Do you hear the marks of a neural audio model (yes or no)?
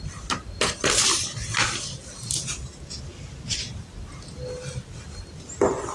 no